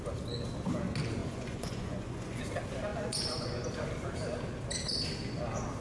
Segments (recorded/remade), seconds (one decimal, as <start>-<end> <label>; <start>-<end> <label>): 0.0-1.2 recorded; 1.2-2.4 remade; 2.4-2.9 recorded; 2.9-3.7 remade; 3.7-5.8 recorded